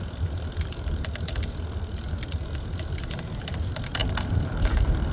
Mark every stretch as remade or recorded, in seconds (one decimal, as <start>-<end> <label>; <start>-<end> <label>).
0.0-5.1 recorded